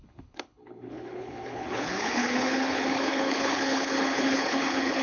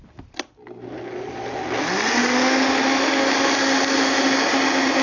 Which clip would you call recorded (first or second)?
second